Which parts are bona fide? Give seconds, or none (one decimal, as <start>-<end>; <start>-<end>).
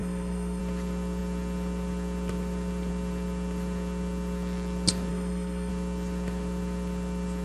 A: 0.6-5.1; 5.7-7.4